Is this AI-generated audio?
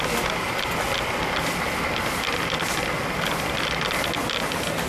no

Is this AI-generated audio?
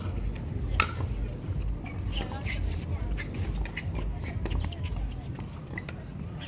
no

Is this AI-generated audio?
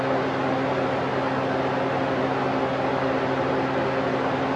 no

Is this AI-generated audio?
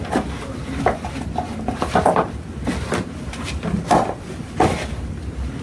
yes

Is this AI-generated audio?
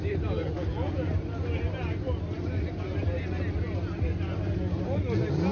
no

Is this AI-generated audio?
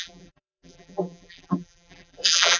yes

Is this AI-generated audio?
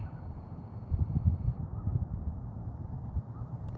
yes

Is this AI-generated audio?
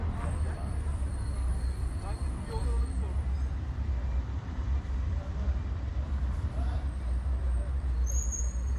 no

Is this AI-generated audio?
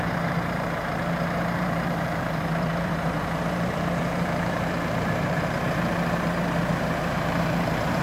yes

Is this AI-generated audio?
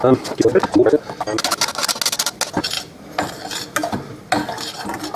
no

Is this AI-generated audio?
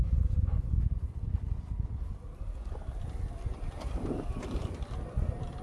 no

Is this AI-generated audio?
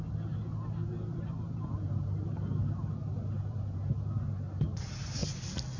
no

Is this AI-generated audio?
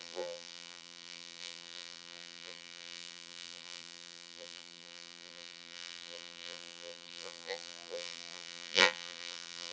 yes